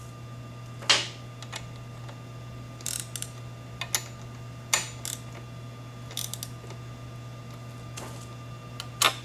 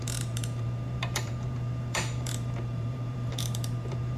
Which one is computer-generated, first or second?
second